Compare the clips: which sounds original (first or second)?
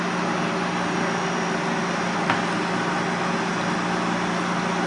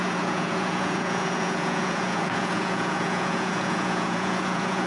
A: first